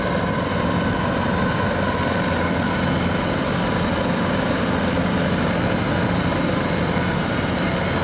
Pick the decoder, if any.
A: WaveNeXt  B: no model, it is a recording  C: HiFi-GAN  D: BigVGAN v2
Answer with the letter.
B